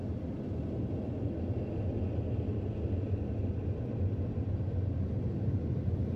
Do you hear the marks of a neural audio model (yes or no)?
no